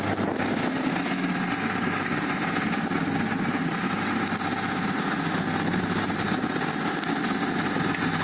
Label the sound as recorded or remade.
recorded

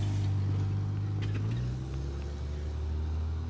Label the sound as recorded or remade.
recorded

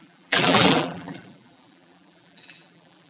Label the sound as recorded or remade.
remade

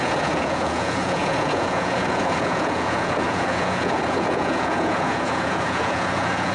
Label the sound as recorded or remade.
remade